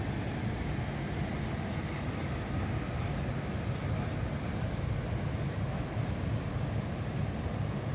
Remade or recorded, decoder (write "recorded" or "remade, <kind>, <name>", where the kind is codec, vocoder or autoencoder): recorded